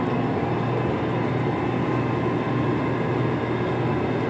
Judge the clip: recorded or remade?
recorded